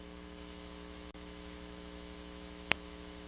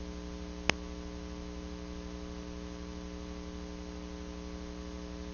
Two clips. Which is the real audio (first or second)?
second